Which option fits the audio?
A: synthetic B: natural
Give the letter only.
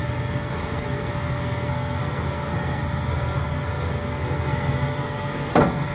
A